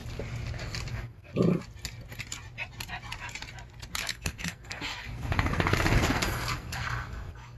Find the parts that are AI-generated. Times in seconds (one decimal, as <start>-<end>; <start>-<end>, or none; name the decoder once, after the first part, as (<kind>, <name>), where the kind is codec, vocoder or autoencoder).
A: 0.9-1.3 (codec, SNAC); 4.0-7.6

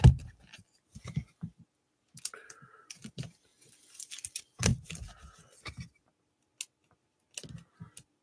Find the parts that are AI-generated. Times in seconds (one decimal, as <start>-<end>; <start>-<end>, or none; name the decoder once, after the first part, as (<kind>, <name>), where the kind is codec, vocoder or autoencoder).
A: none